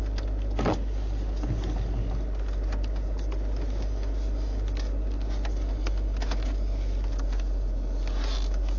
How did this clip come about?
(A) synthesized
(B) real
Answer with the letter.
B